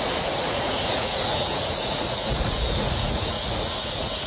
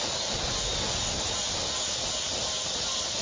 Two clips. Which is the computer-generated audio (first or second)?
first